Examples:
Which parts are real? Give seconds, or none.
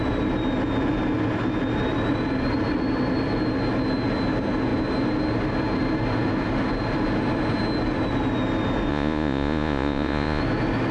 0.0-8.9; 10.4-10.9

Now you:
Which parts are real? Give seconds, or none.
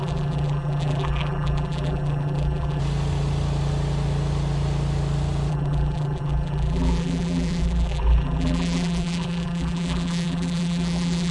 2.8-5.5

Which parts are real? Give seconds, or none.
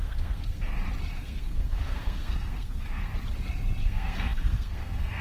0.7-1.2; 3.1-3.8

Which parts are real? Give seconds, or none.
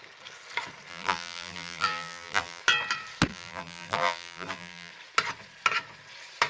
0.0-0.9; 2.6-3.3; 4.9-6.5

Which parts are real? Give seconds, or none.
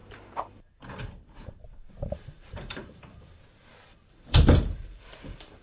3.4-3.9